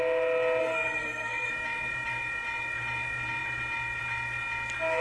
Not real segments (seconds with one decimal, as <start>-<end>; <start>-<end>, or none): 0.6-1.5